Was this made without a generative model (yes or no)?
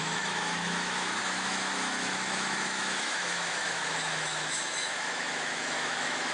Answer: no